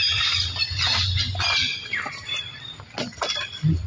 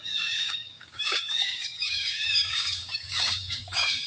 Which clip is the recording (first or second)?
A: first